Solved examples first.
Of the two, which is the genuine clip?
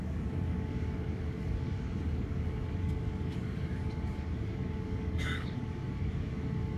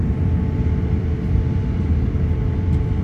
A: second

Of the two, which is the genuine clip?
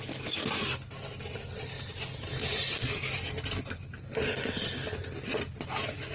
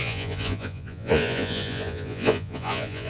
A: first